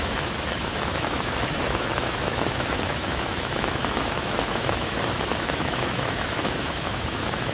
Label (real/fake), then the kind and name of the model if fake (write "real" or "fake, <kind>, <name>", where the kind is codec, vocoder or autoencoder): fake, autoencoder, DAC-VAE